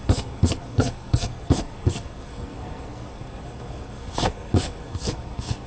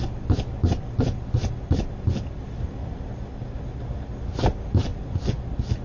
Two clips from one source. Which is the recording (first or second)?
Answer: second